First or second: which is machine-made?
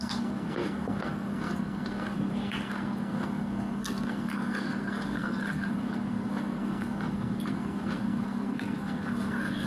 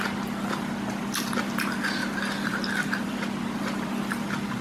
first